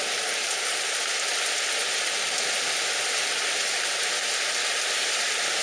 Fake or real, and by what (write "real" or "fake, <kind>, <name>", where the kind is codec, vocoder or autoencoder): real